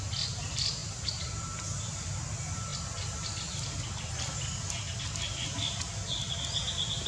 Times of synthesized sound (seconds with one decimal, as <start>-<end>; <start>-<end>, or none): none